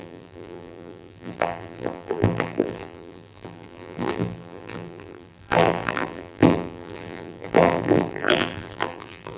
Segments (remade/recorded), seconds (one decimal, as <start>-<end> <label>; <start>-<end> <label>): 0.0-9.4 remade